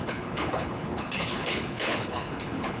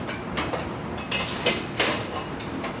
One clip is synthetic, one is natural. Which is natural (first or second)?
second